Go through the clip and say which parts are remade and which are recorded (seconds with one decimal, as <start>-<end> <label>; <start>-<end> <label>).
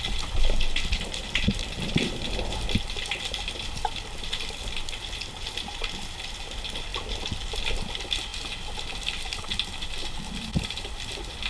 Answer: 0.0-11.5 recorded